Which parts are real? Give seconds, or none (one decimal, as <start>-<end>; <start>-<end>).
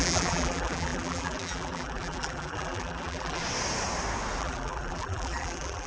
3.4-4.4